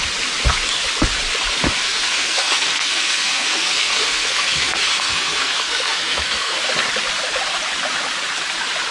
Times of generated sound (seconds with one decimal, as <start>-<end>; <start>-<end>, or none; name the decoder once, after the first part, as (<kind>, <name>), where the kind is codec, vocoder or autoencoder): 1.8-6.6 (codec, SNAC)